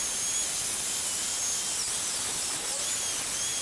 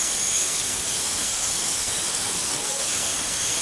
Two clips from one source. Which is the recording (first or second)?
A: first